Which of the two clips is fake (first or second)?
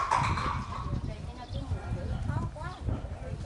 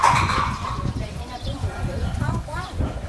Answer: second